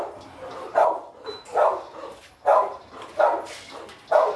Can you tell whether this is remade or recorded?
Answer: recorded